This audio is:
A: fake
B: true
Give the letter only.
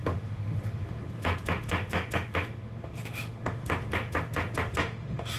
A